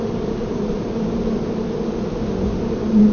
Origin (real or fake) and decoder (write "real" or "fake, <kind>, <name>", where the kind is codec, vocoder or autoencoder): real